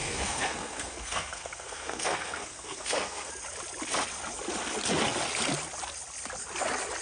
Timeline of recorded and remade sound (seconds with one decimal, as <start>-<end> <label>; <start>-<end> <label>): 0.0-3.3 remade; 3.3-7.0 recorded